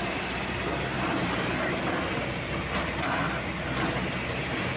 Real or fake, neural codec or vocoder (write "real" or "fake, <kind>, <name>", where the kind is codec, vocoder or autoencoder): real